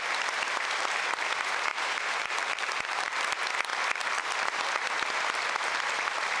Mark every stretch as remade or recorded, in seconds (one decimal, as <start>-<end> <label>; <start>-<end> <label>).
0.0-1.7 recorded; 1.7-3.2 remade; 3.2-6.4 recorded

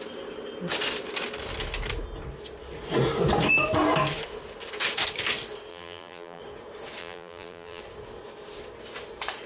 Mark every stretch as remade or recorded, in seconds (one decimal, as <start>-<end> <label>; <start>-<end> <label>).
0.0-5.7 recorded; 5.7-6.4 remade; 6.4-7.0 recorded; 7.0-7.8 remade; 7.8-9.5 recorded

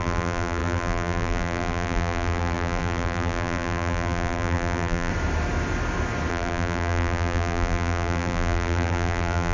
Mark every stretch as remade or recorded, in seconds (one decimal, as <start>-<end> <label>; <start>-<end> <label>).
0.0-5.1 remade; 5.1-6.3 recorded; 6.3-9.5 remade

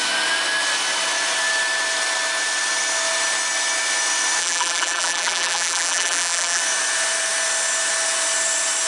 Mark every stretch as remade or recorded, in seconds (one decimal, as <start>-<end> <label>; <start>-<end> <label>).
0.0-4.4 recorded; 4.4-6.6 remade; 6.6-8.9 recorded

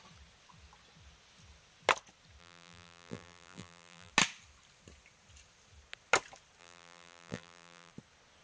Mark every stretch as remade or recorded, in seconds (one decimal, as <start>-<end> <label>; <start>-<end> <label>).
0.0-2.4 recorded; 2.4-4.1 remade; 4.1-6.6 recorded; 6.6-7.9 remade; 7.9-8.4 recorded

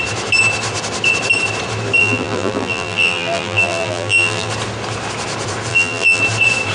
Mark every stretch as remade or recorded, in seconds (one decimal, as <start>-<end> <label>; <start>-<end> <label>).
0.0-2.0 recorded; 2.0-4.5 remade; 4.5-5.7 recorded; 5.7-6.2 remade; 6.2-6.7 recorded

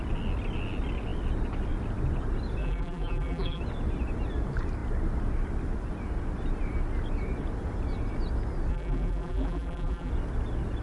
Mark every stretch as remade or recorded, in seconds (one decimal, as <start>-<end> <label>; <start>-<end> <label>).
0.0-2.6 recorded; 2.6-3.6 remade; 3.6-8.7 recorded; 8.7-10.1 remade; 10.1-10.8 recorded

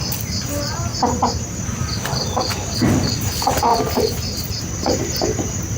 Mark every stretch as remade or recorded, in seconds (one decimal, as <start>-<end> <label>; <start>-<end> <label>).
0.0-0.9 recorded; 0.9-1.6 remade; 1.6-3.7 recorded; 3.7-4.6 remade; 4.6-5.8 recorded